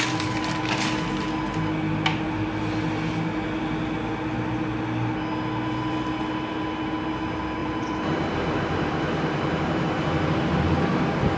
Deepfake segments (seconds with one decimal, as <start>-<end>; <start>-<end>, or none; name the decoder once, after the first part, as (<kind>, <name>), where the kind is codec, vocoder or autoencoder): 7.6-10.6 (vocoder, BigVGAN v2)